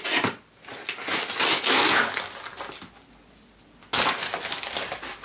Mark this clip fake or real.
real